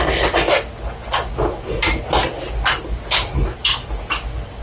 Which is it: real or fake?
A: real